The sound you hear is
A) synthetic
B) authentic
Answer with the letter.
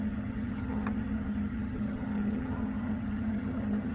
A